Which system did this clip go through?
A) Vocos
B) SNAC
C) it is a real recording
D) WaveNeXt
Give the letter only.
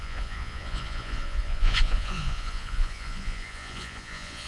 A